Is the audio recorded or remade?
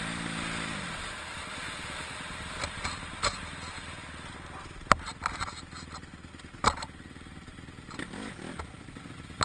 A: recorded